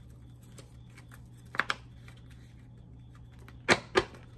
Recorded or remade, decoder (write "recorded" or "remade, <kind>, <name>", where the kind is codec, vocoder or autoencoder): recorded